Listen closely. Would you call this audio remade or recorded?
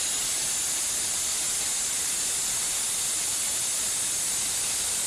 recorded